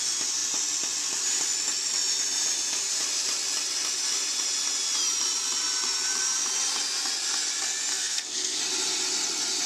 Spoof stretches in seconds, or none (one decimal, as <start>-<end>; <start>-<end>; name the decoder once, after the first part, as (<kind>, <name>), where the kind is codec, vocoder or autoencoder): 7.9-8.6 (codec, SNAC)